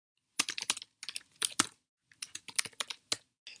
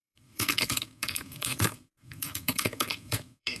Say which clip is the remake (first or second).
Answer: second